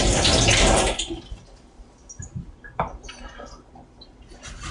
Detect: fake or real fake